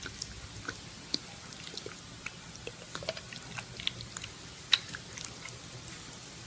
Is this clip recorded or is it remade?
recorded